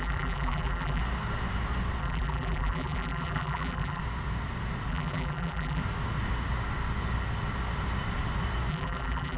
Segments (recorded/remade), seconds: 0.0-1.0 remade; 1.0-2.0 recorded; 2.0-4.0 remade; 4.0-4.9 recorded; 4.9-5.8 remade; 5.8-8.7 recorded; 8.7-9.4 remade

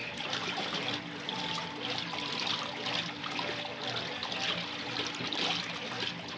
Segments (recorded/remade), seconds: 0.0-0.9 remade; 0.9-6.4 recorded

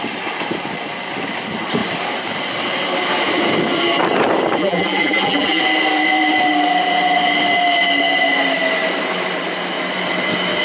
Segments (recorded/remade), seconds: 0.0-4.6 recorded; 4.6-5.6 remade; 5.6-10.6 recorded

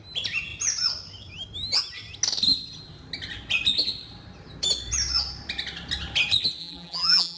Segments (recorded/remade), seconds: 0.0-6.6 recorded; 6.6-7.4 remade

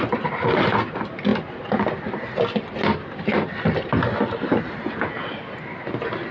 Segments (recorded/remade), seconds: 0.0-1.3 recorded; 1.3-5.1 remade; 5.1-6.3 recorded

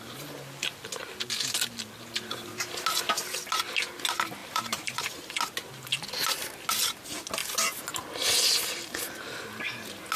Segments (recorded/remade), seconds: 0.0-4.4 recorded; 4.4-5.0 remade; 5.0-10.2 recorded